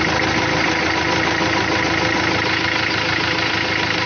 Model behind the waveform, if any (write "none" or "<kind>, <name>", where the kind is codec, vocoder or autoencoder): none